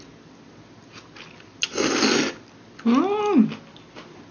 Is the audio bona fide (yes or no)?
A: yes